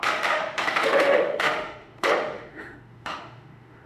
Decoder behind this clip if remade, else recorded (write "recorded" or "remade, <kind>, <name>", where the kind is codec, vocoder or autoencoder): remade, autoencoder, DAC-VAE